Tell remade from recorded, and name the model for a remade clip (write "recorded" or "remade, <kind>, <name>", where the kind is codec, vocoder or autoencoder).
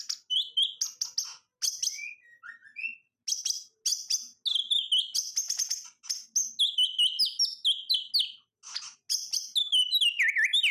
recorded